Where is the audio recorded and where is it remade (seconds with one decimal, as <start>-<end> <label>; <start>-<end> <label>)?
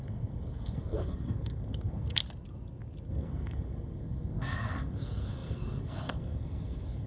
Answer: 0.0-2.2 remade; 2.2-3.1 recorded; 3.1-7.1 remade